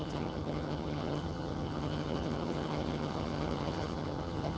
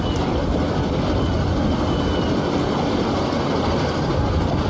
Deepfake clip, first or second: first